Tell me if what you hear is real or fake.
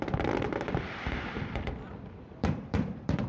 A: fake